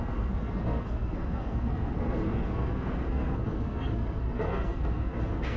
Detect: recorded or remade remade